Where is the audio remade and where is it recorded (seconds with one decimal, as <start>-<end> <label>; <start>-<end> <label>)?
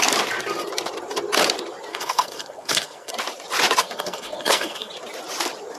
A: 0.0-1.9 recorded; 1.9-3.1 remade; 3.1-3.8 recorded; 3.8-4.9 remade; 4.9-5.8 recorded